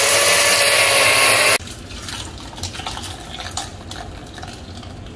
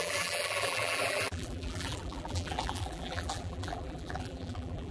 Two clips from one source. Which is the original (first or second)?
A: first